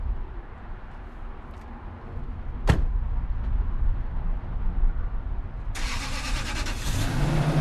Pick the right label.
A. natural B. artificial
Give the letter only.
A